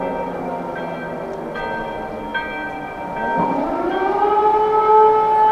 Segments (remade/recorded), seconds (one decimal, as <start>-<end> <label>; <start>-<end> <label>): 0.0-5.5 recorded